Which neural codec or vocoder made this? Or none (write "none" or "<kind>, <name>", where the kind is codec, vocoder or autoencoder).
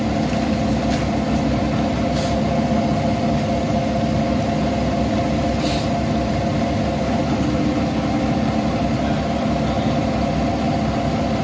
none